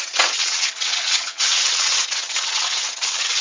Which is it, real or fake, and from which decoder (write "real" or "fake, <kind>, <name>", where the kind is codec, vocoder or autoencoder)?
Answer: fake, vocoder, WaveNeXt